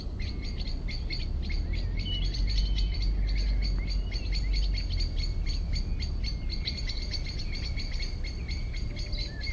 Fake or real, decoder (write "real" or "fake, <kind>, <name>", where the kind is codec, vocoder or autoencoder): real